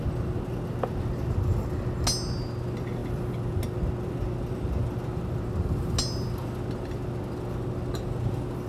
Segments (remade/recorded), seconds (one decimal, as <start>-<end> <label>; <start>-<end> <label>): 0.0-8.7 recorded

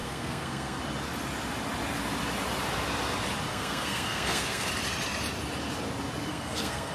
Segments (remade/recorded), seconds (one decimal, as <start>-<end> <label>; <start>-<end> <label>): 0.0-0.8 remade; 0.8-3.5 recorded; 3.5-4.7 remade; 4.7-6.3 recorded; 6.3-6.9 remade

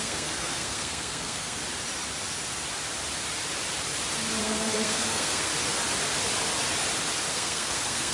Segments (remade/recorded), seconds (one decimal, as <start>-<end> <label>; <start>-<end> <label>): 0.0-1.6 remade; 1.6-4.4 recorded; 4.4-5.5 remade; 5.5-7.3 recorded; 7.3-8.1 remade

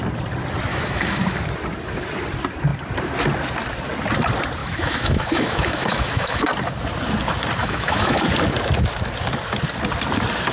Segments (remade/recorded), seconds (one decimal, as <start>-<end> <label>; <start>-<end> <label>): 0.0-0.7 recorded; 0.7-1.4 remade; 1.4-4.6 recorded; 4.6-6.4 remade; 6.4-7.6 recorded; 7.6-8.2 remade; 8.2-10.5 recorded

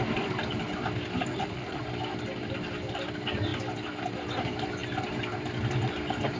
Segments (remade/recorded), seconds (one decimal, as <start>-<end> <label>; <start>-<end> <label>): 0.0-1.3 recorded; 1.3-1.8 remade; 1.8-6.4 recorded

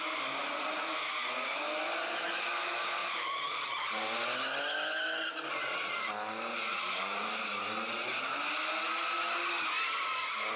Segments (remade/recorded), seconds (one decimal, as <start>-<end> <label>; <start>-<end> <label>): 0.0-3.0 recorded; 3.0-4.6 remade; 4.6-6.7 recorded; 6.7-7.6 remade; 7.6-10.6 recorded

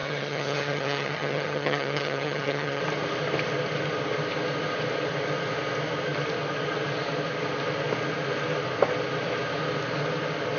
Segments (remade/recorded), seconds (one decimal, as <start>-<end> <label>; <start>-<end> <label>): 0.0-2.8 remade; 2.8-10.6 recorded

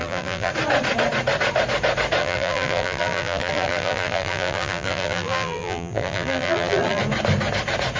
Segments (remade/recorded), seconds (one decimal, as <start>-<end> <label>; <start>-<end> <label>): 0.0-0.5 remade; 0.5-2.2 recorded; 2.2-7.0 remade; 7.0-8.0 recorded